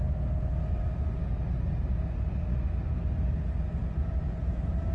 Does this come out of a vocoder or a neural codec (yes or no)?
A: no